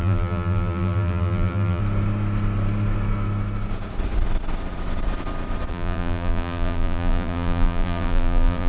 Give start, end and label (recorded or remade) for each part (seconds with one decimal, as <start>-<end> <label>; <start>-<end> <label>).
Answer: 0.0-1.8 remade; 1.8-5.7 recorded; 5.7-8.7 remade